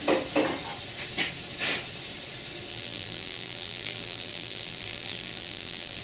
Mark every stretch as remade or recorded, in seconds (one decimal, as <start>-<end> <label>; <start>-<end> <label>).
0.0-2.7 recorded; 2.7-6.0 remade